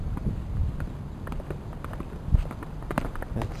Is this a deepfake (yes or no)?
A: yes